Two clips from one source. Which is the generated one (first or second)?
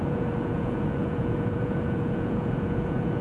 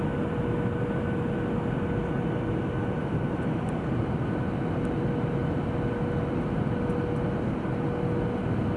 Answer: first